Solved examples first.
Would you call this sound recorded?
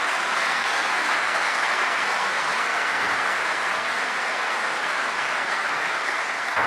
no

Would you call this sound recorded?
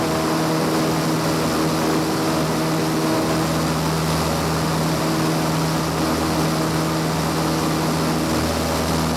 yes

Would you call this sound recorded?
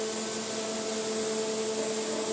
yes